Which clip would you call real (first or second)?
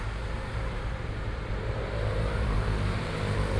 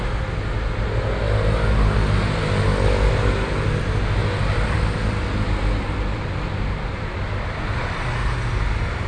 second